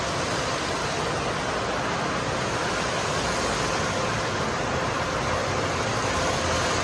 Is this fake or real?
real